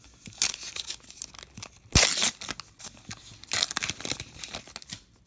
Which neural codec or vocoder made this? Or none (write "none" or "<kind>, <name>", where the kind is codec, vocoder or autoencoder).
none